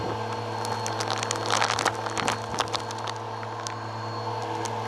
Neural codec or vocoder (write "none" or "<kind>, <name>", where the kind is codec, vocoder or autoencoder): none